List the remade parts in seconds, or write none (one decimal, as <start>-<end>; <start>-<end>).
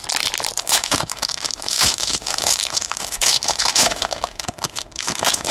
0.6-5.5